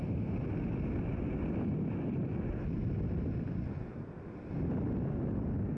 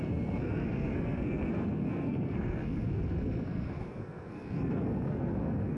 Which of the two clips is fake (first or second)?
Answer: second